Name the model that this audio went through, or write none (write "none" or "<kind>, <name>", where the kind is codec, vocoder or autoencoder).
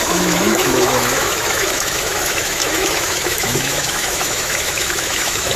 autoencoder, DAC-VAE